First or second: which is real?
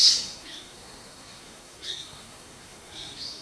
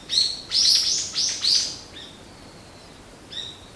second